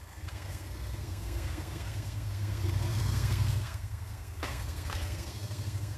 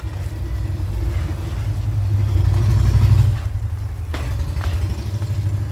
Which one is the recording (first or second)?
second